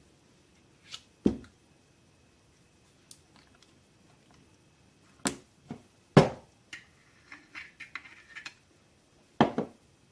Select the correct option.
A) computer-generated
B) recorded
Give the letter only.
B